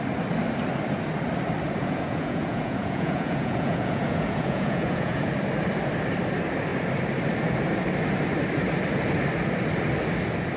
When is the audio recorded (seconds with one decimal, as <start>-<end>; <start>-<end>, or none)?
0.0-1.8; 5.3-10.6